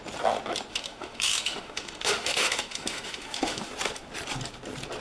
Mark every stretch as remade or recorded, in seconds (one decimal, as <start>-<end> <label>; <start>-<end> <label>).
0.0-0.7 recorded; 0.7-3.7 remade; 3.7-5.0 recorded